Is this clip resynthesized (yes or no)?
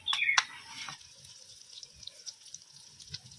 yes